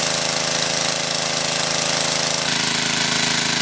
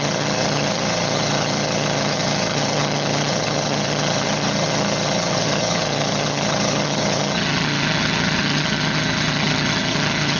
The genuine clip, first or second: first